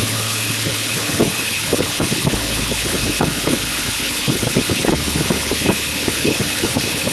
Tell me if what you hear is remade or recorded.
remade